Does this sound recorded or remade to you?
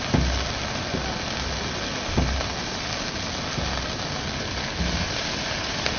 recorded